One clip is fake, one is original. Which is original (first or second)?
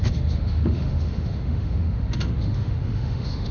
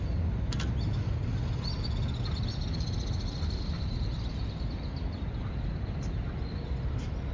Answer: second